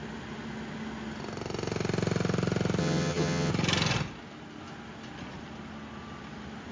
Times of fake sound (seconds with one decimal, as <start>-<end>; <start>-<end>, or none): 2.8-3.5

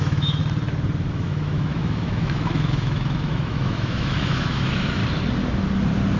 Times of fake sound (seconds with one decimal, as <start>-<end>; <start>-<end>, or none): 0.0-0.4; 1.1-5.0

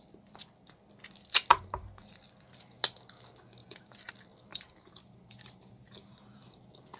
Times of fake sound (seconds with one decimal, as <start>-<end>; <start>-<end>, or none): 1.5-2.2; 3.6-4.1; 4.5-6.2

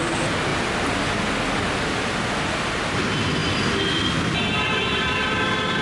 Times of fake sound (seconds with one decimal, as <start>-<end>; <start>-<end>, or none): none

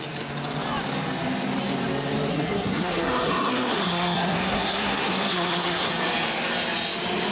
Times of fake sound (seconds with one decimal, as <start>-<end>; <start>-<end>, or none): 2.3-5.9